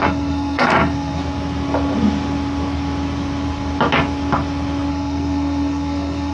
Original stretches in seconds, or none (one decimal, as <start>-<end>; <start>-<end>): 1.2-4.9